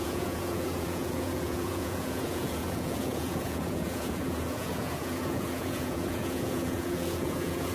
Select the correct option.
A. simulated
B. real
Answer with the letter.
A